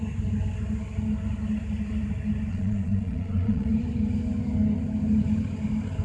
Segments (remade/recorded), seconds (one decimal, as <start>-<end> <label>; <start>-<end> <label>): 0.0-2.5 recorded; 2.5-3.7 remade; 3.7-6.0 recorded